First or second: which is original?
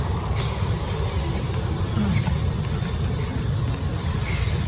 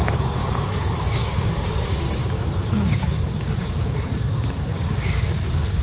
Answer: first